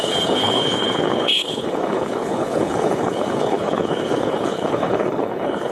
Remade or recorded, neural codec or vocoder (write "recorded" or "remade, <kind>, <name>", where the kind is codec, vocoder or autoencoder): remade, codec, HILCodec